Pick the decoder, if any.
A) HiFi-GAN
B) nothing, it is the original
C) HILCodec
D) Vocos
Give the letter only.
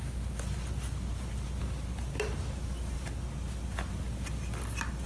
B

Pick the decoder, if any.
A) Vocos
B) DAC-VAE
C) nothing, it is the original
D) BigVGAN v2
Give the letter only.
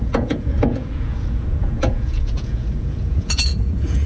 A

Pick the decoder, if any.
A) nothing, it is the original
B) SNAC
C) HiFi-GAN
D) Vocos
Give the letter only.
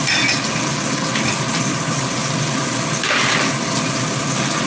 A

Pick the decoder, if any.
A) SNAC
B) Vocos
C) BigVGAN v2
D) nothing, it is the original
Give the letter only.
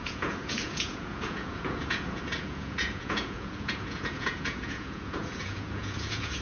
B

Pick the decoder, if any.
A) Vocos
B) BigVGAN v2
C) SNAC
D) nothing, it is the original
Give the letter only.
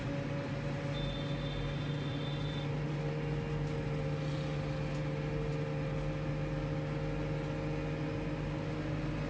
D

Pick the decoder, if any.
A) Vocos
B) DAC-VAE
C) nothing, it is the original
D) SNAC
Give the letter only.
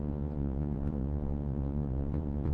A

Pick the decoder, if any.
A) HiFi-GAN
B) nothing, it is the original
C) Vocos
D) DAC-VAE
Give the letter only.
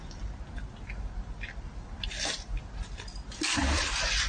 B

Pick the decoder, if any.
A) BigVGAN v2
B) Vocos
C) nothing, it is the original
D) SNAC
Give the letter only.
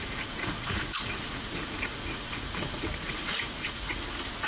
B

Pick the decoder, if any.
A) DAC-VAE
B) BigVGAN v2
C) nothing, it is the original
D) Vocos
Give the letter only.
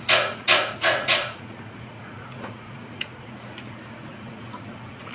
D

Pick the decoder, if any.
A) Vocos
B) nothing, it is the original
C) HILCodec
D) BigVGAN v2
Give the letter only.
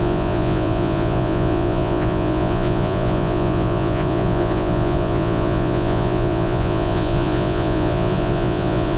A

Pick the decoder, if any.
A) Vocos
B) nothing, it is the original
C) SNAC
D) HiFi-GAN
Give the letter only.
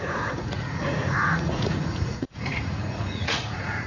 A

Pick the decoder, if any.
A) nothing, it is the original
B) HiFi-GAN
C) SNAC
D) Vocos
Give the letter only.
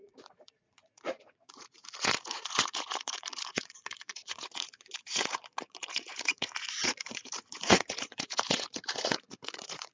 D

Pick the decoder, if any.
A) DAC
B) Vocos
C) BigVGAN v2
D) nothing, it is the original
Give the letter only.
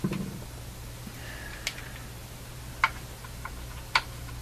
D